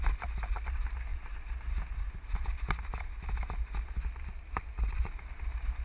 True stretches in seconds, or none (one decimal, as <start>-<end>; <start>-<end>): 0.0-5.8